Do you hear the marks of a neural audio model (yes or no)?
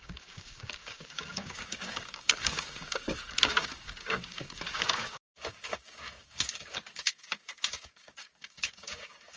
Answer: yes